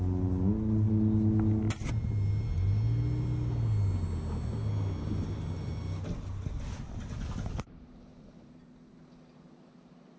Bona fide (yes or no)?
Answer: yes